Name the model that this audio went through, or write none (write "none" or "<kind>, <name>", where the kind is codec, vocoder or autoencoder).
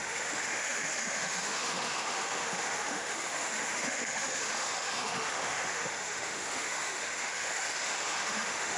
autoencoder, DAC-VAE